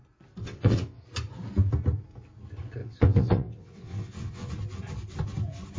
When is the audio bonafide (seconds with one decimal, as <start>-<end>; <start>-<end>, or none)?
0.0-0.4; 1.0-2.8; 4.5-5.8